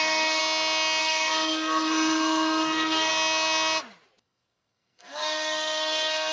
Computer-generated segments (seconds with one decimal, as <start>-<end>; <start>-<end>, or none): 0.0-0.4; 1.0-3.1; 4.2-6.3